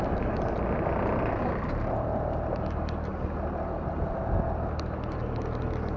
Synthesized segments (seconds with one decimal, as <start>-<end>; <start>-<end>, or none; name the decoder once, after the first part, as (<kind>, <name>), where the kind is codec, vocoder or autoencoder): none